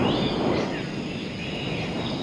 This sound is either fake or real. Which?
real